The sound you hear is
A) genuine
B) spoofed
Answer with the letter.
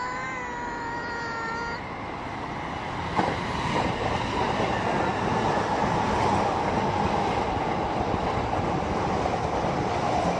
A